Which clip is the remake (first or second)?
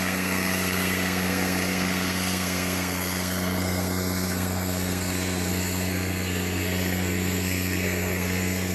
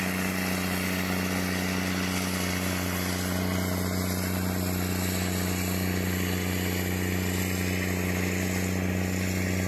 first